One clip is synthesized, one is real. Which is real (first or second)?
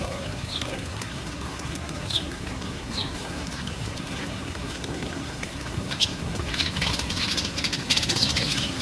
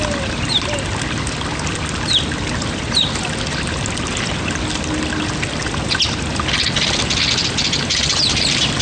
second